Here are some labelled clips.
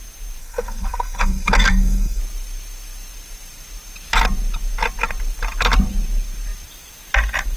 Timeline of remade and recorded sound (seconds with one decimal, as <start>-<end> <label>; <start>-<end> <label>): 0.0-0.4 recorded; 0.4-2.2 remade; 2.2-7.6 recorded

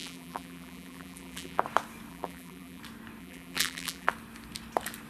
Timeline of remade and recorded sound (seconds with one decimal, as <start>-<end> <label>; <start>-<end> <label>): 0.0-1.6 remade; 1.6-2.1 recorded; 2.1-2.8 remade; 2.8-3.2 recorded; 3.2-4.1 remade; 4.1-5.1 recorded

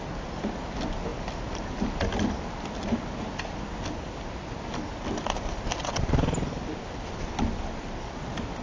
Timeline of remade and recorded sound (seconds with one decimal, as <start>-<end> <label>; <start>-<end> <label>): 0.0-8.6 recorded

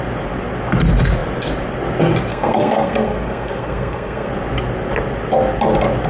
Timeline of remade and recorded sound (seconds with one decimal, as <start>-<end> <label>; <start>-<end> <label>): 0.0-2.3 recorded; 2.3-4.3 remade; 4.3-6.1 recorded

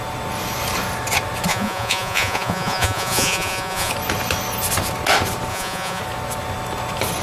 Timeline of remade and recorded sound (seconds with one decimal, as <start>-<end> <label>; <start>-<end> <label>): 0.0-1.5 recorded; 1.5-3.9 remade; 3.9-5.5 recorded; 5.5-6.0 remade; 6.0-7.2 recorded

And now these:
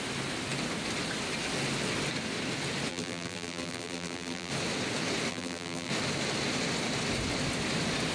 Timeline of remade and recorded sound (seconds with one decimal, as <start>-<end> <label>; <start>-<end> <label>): 0.0-2.9 recorded; 2.9-4.5 remade; 4.5-5.3 recorded; 5.3-5.9 remade; 5.9-8.1 recorded

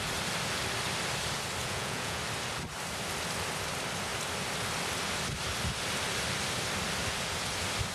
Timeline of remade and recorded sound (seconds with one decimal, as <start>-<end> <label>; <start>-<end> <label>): 0.0-1.6 recorded; 1.6-2.2 remade; 2.2-7.9 recorded